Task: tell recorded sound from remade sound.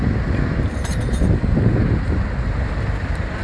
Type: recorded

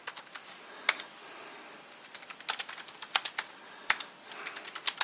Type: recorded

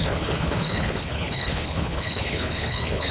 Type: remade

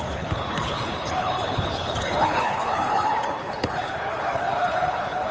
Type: remade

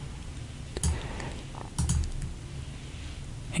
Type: recorded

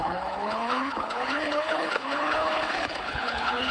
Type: remade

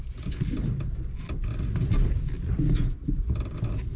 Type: recorded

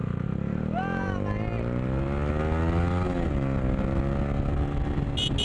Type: recorded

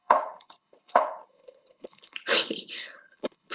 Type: remade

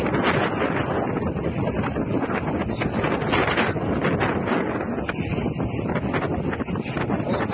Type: recorded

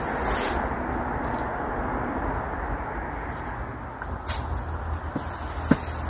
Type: recorded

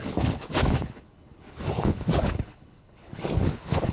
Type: remade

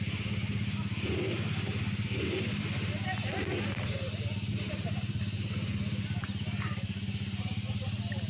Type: recorded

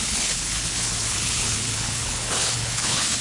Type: remade